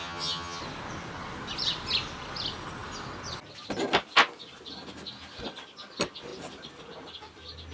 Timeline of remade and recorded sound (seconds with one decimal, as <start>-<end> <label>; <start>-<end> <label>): 0.0-0.6 remade; 0.6-7.7 recorded